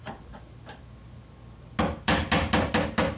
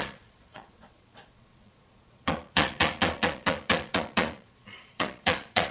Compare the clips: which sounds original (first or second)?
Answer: first